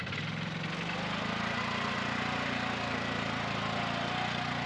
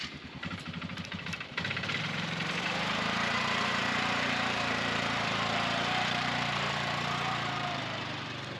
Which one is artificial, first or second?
second